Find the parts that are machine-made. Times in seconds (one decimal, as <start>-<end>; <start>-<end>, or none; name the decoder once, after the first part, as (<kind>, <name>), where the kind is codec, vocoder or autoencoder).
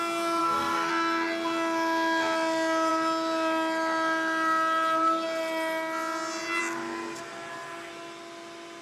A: 0.4-0.9 (codec, SNAC)